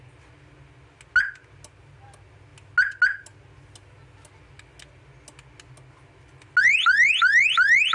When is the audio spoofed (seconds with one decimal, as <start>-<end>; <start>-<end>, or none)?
none